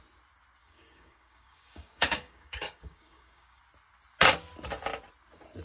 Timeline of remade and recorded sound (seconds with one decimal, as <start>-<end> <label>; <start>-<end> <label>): 0.0-0.6 recorded; 0.6-3.6 remade; 3.6-5.6 recorded